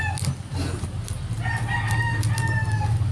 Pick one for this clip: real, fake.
real